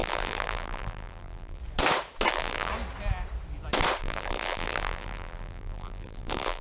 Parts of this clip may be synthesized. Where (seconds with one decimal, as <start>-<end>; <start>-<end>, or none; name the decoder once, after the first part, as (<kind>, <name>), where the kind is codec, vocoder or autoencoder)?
0.0-1.6 (vocoder, BigVGAN v2); 2.3-2.7; 4.0-6.6